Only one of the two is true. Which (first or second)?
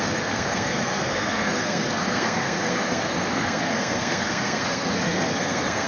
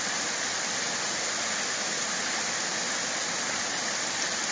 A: second